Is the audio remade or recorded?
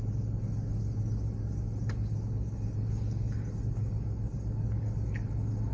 recorded